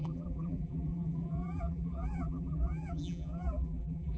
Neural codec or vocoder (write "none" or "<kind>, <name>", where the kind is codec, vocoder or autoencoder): vocoder, BigVGAN v2